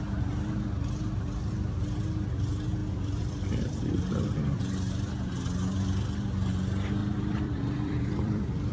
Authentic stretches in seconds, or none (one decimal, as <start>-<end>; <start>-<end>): 0.0-2.8; 4.6-7.0